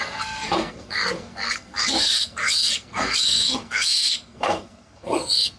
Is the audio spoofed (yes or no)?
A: yes